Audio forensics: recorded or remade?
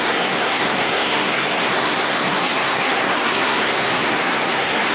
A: remade